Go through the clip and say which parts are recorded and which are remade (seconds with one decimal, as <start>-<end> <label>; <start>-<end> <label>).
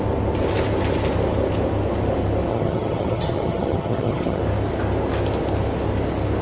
0.0-2.5 recorded; 2.5-4.4 remade; 4.4-6.4 recorded